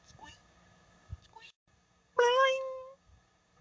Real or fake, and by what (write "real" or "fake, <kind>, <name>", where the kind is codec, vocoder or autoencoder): fake, codec, DAC